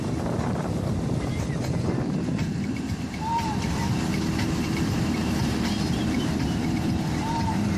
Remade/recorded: remade